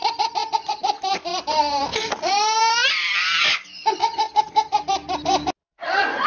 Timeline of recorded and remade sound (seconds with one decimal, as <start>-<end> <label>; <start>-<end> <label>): 0.0-5.6 recorded; 5.6-6.3 remade